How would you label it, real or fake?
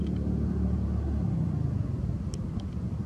real